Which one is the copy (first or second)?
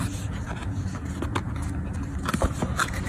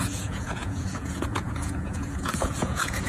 second